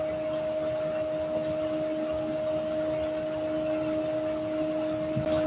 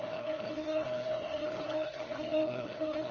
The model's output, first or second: second